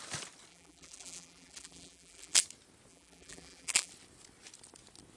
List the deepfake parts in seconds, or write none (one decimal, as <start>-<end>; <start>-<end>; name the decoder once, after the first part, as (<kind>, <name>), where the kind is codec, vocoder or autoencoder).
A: 0.5-2.4 (vocoder, BigVGAN v2); 2.9-3.9